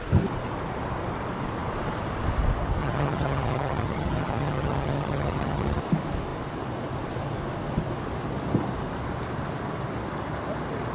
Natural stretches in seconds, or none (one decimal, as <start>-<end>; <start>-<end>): 0.0-2.8; 5.8-10.9